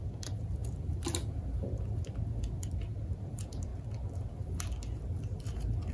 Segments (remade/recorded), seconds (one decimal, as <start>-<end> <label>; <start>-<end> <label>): 0.0-5.9 recorded